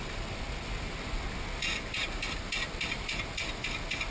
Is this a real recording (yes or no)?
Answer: yes